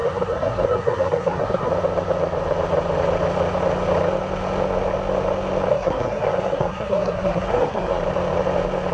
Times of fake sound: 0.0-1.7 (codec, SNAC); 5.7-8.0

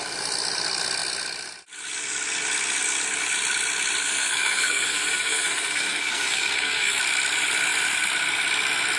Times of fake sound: 4.0-7.0 (codec, SNAC)